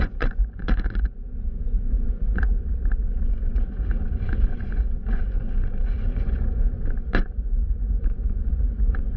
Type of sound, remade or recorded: remade